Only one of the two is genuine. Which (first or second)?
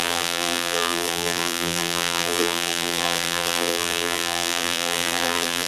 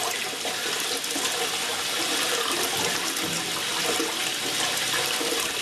second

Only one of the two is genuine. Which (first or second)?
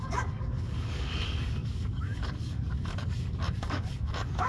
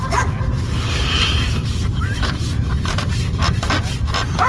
second